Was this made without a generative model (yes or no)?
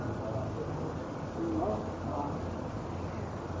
yes